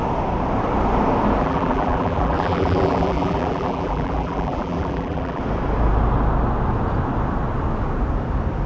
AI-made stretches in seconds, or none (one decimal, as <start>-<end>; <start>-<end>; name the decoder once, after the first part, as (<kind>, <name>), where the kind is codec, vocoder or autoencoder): 1.4-5.4 (vocoder, BigVGAN v2)